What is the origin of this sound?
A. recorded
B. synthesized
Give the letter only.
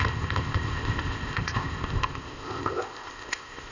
B